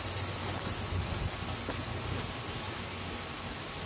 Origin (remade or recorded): recorded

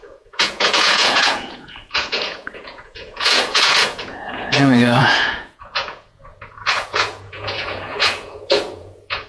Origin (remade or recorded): remade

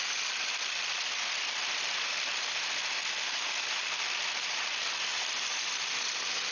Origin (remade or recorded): recorded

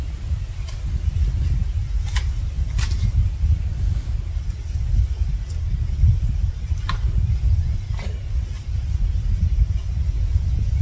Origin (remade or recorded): recorded